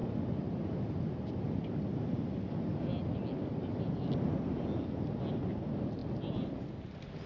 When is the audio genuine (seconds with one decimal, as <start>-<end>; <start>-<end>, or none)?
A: 0.0-7.3